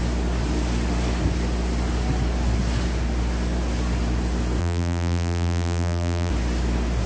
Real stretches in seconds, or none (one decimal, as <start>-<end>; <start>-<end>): 0.0-4.6; 6.3-7.1